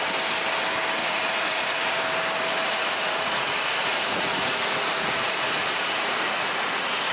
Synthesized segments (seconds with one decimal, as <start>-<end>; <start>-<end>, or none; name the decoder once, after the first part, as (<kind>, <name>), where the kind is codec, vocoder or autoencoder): 1.0-2.0 (vocoder, Vocos); 2.4-7.1